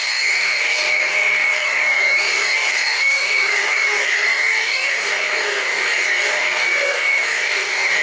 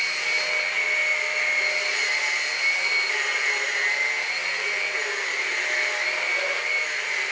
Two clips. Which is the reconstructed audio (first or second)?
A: first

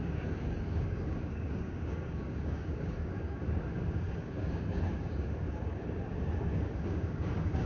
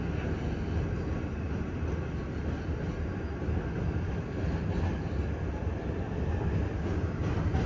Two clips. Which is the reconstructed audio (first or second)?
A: first